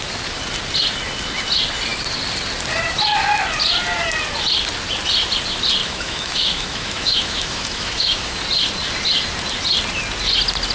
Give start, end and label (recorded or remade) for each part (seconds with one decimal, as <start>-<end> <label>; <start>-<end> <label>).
0.0-5.8 recorded; 5.8-8.4 remade; 8.4-10.7 recorded